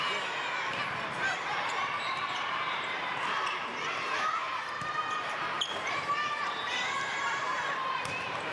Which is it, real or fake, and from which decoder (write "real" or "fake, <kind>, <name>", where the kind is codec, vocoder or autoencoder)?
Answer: fake, vocoder, BigVGAN v2